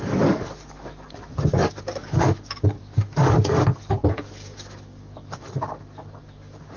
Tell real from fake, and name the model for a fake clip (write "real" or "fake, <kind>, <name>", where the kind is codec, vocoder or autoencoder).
fake, codec, DAC